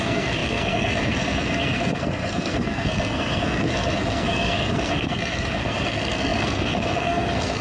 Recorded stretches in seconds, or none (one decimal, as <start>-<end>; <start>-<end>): none